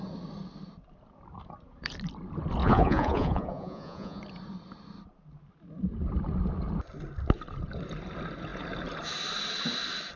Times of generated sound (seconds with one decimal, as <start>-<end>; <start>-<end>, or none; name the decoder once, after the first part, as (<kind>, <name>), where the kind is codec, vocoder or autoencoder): 2.6-4.2 (vocoder, Vocos)